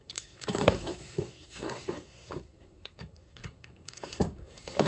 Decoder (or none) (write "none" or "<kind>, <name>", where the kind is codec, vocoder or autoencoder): codec, SNAC